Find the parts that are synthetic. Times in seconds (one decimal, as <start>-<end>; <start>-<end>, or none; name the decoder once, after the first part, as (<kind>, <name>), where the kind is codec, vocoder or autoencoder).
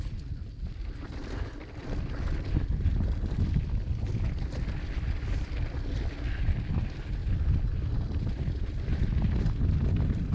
none